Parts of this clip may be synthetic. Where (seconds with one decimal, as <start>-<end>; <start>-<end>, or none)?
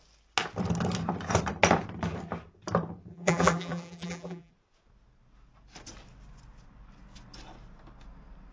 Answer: 3.1-4.5